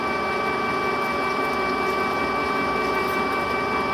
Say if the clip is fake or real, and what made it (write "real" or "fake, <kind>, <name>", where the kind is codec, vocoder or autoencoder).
real